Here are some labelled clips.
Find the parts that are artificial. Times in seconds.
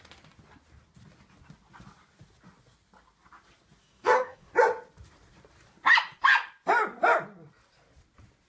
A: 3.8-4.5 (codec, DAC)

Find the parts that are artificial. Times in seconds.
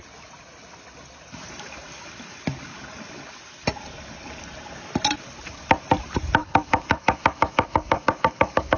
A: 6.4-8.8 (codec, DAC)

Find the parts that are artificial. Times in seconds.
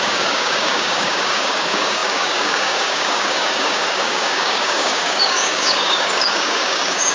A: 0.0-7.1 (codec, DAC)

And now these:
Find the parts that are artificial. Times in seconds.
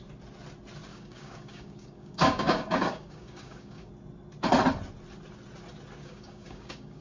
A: 0.9-3.9 (codec, DAC); 6.0-7.0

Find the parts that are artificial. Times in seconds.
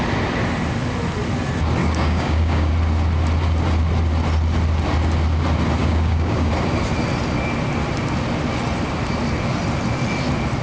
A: 1.8-2.7 (codec, DAC); 5.8-6.5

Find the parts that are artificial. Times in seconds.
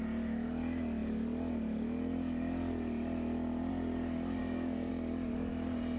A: 4.4-4.9 (codec, DAC)